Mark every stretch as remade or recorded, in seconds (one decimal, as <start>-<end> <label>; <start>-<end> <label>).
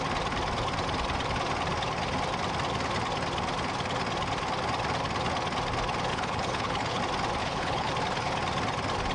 0.0-6.1 recorded; 6.1-7.0 remade; 7.0-7.4 recorded; 7.4-7.9 remade; 7.9-9.1 recorded